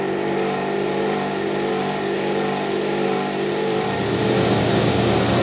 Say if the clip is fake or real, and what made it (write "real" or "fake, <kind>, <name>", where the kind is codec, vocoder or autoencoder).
fake, vocoder, BigVGAN v2